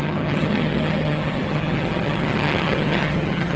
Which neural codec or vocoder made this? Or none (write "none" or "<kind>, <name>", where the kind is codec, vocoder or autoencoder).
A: vocoder, HiFi-GAN